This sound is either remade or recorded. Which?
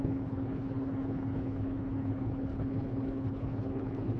remade